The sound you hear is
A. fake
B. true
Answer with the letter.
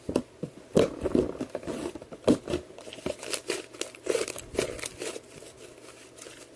B